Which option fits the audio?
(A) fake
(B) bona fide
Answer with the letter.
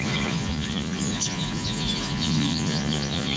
A